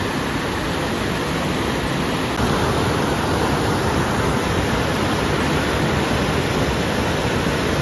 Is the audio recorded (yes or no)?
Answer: yes